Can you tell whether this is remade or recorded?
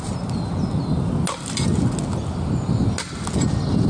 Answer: recorded